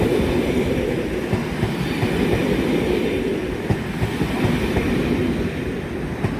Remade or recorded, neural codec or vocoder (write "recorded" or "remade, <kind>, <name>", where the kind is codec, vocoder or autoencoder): recorded